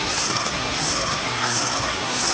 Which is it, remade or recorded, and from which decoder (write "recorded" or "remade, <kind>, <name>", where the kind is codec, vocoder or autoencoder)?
remade, codec, SNAC